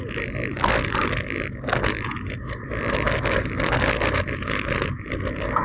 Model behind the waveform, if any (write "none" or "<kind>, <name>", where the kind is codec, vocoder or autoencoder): none